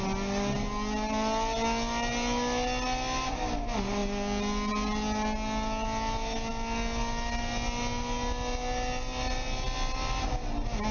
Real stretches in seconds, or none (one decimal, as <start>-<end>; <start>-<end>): 0.0-10.9

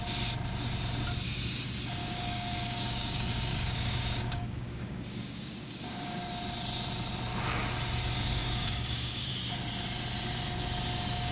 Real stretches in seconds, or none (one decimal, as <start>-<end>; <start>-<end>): 0.0-2.0; 6.2-8.4; 9.3-11.3

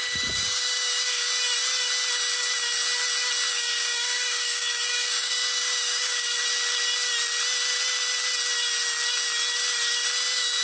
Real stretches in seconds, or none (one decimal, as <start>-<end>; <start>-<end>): 1.3-3.5; 6.4-10.6

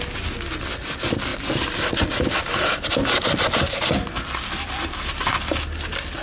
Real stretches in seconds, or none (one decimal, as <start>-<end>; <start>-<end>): 0.0-6.2

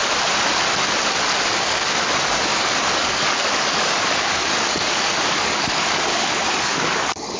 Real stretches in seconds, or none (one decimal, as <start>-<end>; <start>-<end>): 0.0-1.5